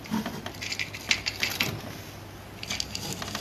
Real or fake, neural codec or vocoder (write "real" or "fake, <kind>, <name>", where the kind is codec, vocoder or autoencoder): real